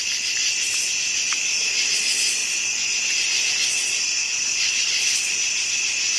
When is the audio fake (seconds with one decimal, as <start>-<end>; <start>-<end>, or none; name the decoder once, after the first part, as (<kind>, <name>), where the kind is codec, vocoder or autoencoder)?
4.2-5.3 (codec, HILCodec)